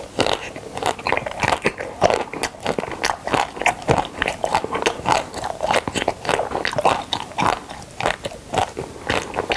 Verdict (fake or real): real